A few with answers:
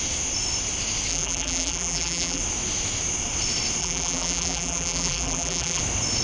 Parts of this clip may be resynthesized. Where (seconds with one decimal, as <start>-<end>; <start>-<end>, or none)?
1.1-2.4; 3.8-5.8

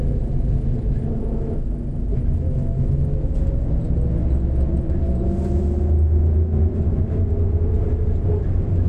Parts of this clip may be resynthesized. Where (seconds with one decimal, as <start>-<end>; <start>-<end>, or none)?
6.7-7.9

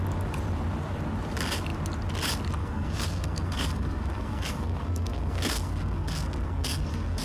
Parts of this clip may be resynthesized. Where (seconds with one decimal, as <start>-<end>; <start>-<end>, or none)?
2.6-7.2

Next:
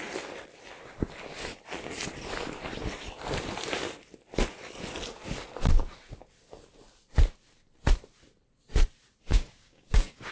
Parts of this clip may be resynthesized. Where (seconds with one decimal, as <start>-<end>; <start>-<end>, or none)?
9.3-10.3